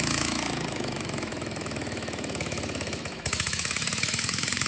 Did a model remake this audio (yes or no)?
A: yes